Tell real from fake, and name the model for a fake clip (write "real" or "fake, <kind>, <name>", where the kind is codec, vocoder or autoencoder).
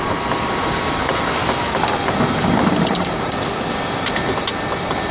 real